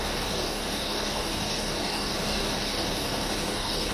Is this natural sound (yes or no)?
no